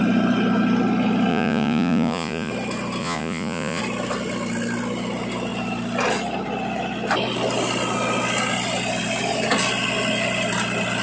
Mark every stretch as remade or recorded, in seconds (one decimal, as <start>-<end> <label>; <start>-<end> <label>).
0.0-1.3 recorded; 1.3-2.5 remade; 2.5-3.0 recorded; 3.0-3.8 remade; 3.8-11.0 recorded